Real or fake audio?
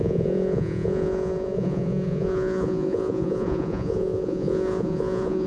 fake